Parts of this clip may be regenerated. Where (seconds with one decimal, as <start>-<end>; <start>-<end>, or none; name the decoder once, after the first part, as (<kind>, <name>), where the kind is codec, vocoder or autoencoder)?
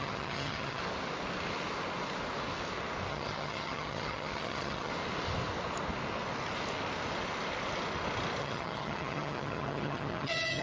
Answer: 0.0-0.8 (vocoder, HiFi-GAN); 3.1-4.9; 8.4-10.6